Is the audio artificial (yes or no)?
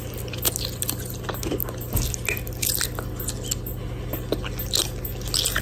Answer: no